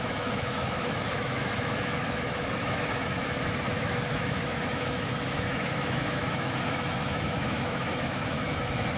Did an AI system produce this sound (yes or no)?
yes